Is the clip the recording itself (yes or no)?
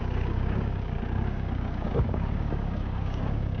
no